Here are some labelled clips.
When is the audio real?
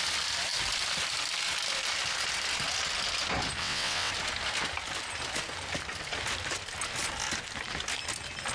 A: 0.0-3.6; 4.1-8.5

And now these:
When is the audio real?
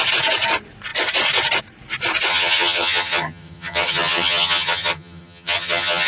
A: 0.0-2.3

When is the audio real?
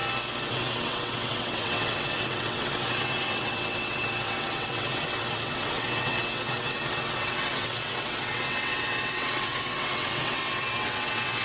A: 0.0-0.5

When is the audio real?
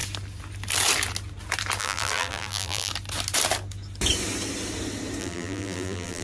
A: 0.0-1.8; 2.9-5.2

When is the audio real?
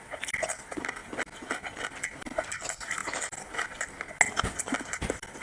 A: 0.0-5.4